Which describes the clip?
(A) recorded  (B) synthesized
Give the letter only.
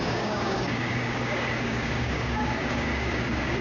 B